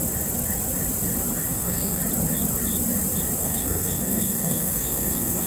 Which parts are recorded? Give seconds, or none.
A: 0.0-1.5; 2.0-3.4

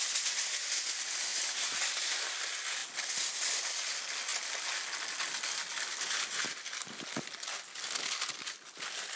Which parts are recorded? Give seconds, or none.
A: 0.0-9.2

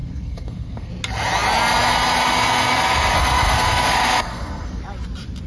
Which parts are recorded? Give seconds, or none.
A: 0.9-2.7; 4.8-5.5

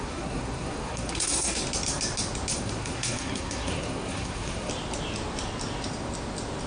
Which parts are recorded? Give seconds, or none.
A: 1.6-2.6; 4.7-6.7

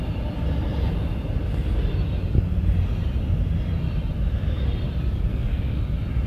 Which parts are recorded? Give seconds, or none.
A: 0.0-5.3; 5.8-6.3

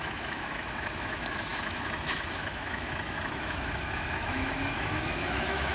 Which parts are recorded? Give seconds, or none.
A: none

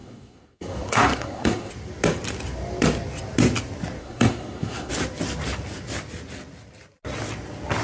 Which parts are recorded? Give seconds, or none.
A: 1.7-4.0; 4.9-7.8